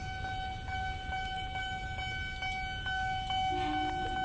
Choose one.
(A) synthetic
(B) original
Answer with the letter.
B